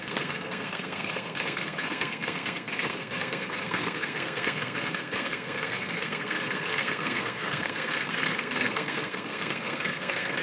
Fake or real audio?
fake